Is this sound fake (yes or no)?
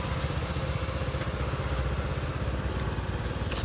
no